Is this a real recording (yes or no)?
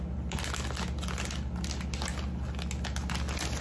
yes